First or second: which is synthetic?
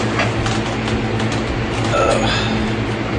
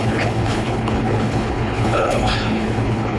second